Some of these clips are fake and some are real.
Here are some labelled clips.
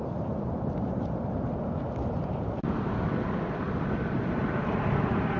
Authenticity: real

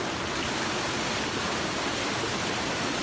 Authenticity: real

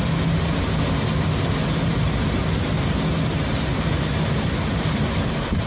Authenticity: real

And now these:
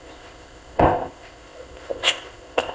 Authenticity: fake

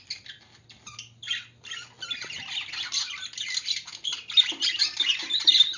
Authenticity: real